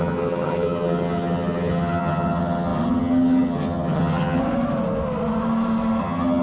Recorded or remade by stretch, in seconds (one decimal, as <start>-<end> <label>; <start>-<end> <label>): 0.0-4.4 remade; 4.4-6.0 recorded; 6.0-6.4 remade